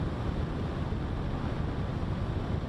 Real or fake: real